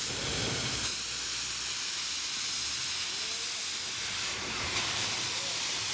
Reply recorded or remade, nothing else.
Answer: recorded